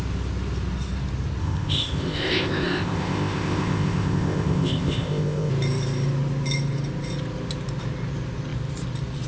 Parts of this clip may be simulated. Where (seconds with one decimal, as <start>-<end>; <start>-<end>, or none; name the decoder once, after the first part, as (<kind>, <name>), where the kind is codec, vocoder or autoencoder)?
1.4-5.5 (codec, ZipCodec)